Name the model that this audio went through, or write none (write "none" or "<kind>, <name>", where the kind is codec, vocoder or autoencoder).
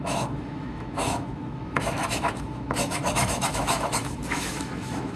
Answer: autoencoder, DAC-VAE